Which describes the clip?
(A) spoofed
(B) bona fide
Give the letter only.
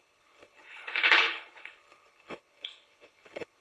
A